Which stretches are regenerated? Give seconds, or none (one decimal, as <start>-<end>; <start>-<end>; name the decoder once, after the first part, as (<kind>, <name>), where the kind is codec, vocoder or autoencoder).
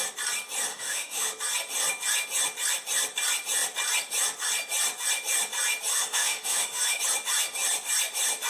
0.7-1.3 (autoencoder, DAC-VAE); 5.9-7.0